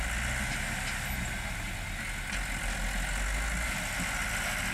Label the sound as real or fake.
real